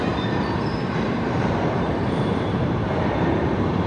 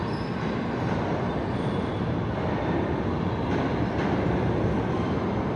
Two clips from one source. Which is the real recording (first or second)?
second